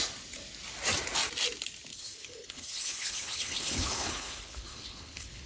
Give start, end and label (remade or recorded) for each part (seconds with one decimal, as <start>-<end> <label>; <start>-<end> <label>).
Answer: 0.0-1.9 recorded; 1.9-5.5 remade